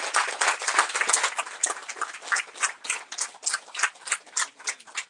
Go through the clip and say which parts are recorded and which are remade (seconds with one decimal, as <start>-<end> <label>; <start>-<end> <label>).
0.0-5.1 recorded